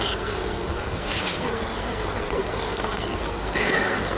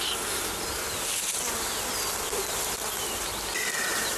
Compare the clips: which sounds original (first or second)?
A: second